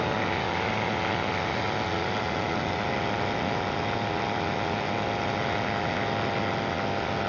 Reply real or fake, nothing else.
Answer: real